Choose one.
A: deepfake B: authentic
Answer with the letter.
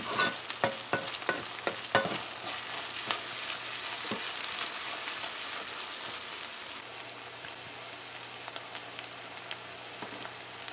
B